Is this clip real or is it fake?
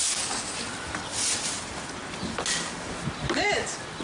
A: real